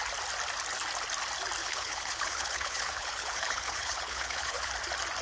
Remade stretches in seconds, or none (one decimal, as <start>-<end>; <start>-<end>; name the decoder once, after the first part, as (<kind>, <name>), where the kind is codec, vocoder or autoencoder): 1.6-4.7 (codec, HILCodec)